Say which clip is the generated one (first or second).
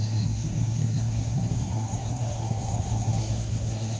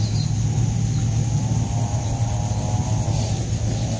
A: first